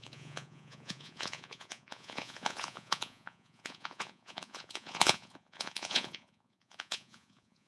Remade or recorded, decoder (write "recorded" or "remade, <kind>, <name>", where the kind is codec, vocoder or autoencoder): remade, vocoder, Vocos